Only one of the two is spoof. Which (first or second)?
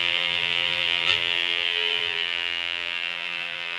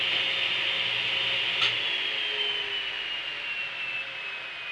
first